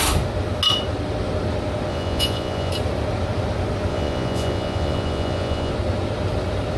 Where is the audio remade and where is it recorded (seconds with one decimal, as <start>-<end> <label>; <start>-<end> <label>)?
0.0-1.9 recorded; 1.9-2.7 remade; 2.7-3.9 recorded; 3.9-5.7 remade; 5.7-6.8 recorded